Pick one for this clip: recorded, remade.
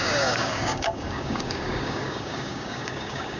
remade